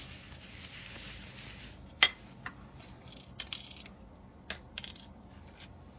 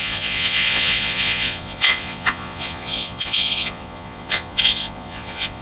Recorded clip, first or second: first